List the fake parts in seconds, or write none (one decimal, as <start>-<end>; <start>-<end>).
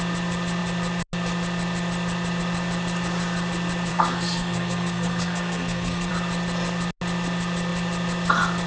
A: 3.9-6.1